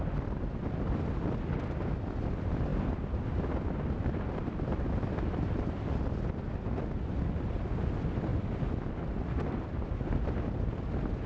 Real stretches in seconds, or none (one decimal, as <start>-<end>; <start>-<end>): 0.0-11.3